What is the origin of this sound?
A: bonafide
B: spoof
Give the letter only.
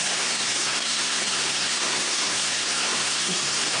B